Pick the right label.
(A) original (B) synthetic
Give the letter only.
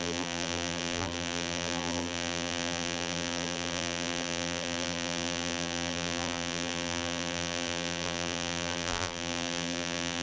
B